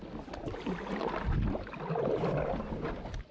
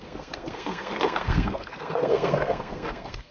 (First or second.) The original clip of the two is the first